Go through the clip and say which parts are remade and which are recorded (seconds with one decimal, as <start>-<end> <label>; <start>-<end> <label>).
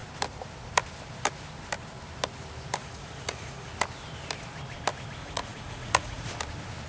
0.0-2.8 recorded; 2.8-3.7 remade; 3.7-5.2 recorded; 5.2-6.3 remade; 6.3-6.9 recorded